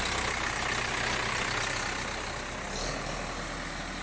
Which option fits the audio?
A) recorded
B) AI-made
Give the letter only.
A